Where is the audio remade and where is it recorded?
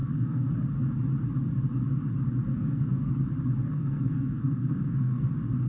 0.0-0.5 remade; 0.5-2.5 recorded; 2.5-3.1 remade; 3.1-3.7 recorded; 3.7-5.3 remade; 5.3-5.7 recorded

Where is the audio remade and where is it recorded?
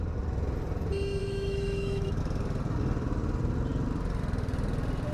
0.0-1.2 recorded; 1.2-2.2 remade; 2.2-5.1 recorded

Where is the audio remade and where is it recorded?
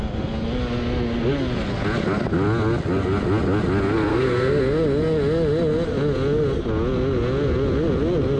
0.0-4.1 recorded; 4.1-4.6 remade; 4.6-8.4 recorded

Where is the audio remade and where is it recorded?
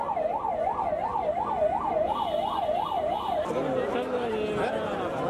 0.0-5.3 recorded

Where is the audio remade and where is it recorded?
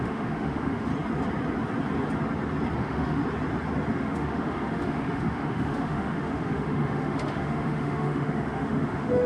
0.0-0.9 remade; 0.9-2.8 recorded; 2.8-3.2 remade; 3.2-3.9 recorded; 3.9-9.3 remade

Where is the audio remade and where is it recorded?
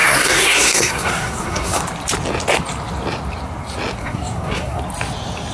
0.0-1.8 remade; 1.8-4.0 recorded; 4.0-4.8 remade; 4.8-5.5 recorded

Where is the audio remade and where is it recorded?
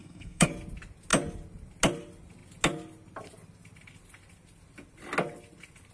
0.0-0.5 remade; 0.5-5.9 recorded